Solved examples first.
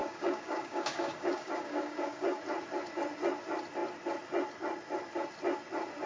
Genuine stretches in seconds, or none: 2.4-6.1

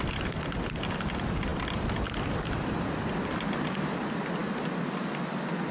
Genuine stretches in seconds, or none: 0.0-5.7

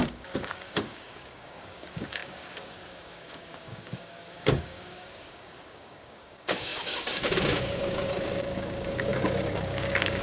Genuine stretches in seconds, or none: none

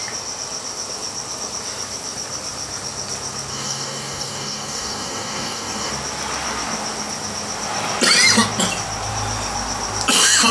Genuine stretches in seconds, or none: 0.0-3.5; 5.9-10.5

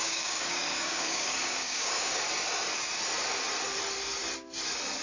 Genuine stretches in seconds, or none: 2.2-5.0